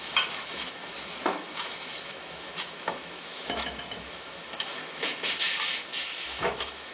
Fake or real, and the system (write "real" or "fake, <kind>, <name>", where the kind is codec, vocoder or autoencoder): fake, autoencoder, DAC-VAE